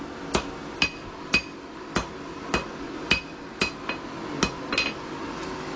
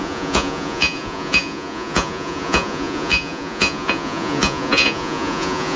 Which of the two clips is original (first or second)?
first